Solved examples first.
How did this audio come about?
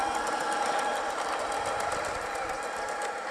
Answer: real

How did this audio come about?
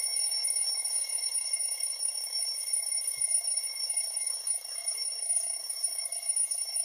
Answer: fake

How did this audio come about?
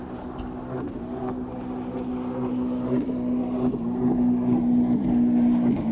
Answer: real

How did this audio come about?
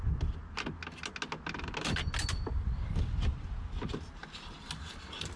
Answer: real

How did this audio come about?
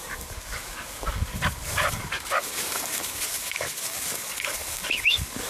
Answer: fake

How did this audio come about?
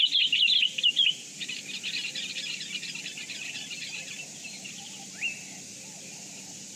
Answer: real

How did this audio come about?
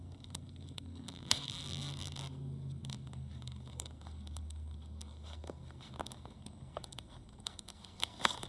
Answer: fake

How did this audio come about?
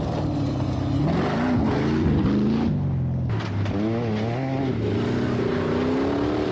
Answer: real